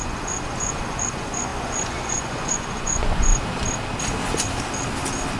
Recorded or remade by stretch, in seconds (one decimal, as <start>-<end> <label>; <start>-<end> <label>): 0.0-3.3 remade; 3.3-5.4 recorded